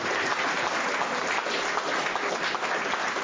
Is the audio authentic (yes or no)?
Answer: yes